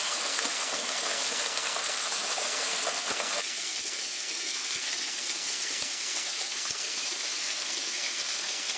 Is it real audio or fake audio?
fake